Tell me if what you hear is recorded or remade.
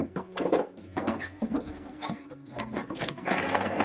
remade